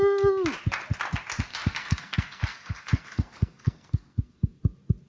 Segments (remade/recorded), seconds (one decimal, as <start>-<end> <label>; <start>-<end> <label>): 0.0-1.5 recorded; 1.5-4.6 remade; 4.6-5.1 recorded